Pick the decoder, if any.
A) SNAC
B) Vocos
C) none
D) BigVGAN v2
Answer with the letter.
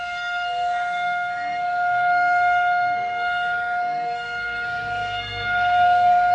A